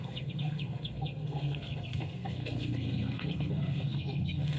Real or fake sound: fake